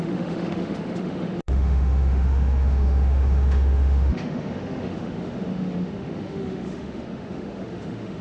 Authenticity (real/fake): fake